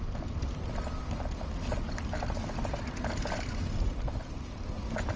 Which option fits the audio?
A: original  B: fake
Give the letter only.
A